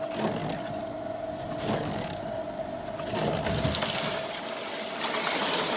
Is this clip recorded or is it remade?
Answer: recorded